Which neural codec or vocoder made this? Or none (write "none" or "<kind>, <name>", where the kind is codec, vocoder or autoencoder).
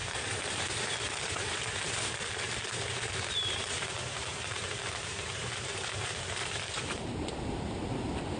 vocoder, BigVGAN v2